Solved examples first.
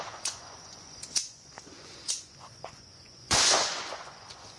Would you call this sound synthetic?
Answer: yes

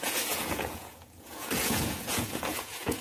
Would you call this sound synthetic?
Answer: yes